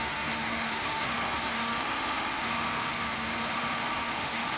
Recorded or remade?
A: remade